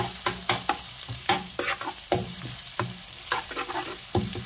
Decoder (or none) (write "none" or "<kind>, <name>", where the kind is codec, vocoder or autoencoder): none